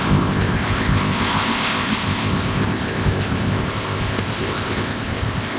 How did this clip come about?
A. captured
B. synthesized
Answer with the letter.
B